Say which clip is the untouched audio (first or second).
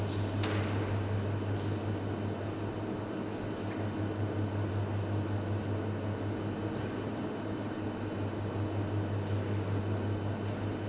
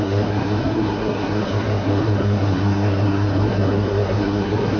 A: first